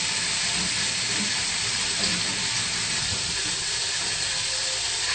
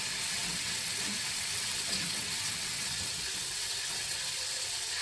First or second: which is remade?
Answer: second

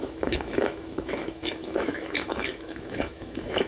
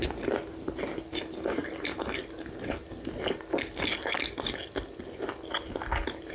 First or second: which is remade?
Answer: first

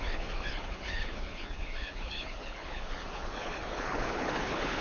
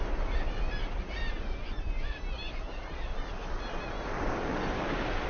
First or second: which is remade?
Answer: first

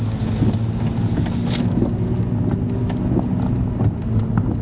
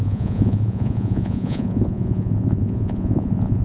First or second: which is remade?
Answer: second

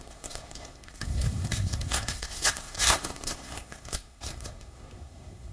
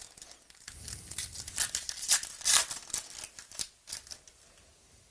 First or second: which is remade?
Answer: first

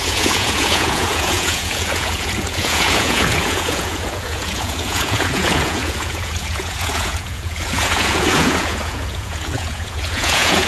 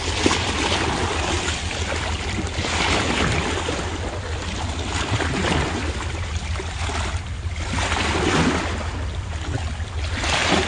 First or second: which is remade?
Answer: first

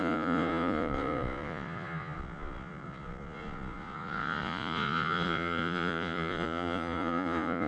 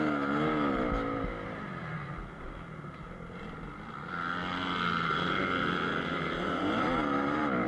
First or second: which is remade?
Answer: first